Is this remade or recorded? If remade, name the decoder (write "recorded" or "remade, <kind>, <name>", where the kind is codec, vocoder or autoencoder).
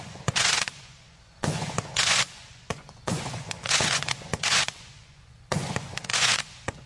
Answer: remade, vocoder, Vocos